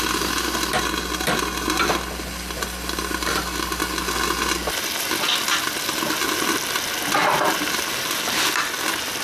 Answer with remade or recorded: recorded